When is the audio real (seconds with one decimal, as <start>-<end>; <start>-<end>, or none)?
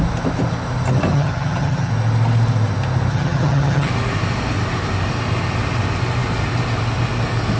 0.0-1.1; 1.9-3.1; 3.9-7.6